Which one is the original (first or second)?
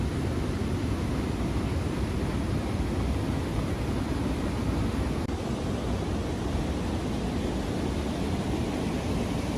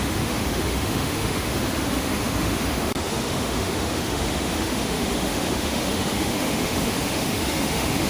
first